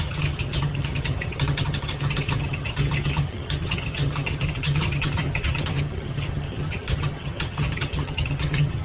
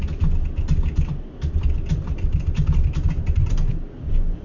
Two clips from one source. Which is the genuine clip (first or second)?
second